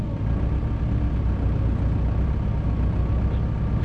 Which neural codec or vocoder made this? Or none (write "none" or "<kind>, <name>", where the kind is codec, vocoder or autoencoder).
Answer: none